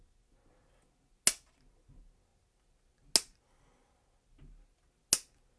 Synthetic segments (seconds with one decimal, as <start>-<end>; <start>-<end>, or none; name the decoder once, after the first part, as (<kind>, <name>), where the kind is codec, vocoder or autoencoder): none